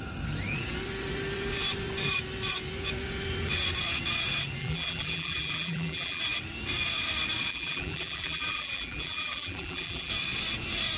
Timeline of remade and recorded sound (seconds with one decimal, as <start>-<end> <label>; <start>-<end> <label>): 0.0-4.6 recorded; 4.6-6.2 remade; 6.2-7.5 recorded; 7.5-10.1 remade; 10.1-11.0 recorded